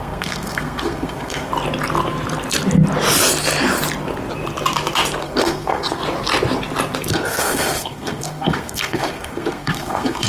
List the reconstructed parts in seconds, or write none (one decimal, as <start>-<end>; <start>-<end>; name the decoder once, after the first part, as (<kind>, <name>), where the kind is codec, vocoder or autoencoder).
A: 0.0-1.5 (codec, SNAC); 5.2-6.0; 7.1-10.3